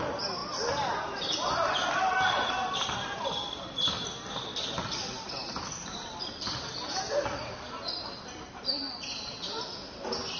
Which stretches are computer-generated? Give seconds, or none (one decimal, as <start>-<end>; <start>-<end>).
none